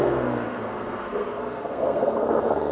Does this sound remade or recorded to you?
remade